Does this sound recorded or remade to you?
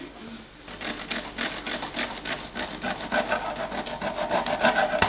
recorded